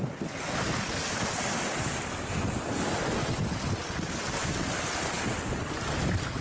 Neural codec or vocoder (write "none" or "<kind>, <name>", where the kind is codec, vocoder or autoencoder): none